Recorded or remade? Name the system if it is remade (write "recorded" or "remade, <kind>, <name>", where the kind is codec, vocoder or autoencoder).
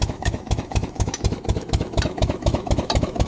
remade, autoencoder, DAC-VAE